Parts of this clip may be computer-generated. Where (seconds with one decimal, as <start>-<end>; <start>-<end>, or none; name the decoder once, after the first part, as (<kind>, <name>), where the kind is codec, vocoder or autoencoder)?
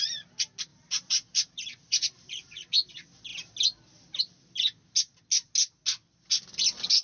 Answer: 0.7-2.9 (vocoder, BigVGAN v2)